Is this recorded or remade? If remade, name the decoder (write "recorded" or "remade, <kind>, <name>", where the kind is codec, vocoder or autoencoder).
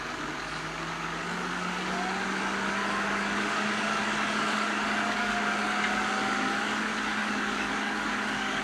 remade, codec, DAC